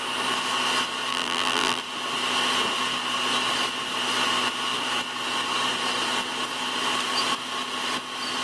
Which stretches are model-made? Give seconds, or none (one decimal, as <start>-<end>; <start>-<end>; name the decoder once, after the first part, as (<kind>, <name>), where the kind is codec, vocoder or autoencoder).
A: 1.1-1.8 (vocoder, BigVGAN v2)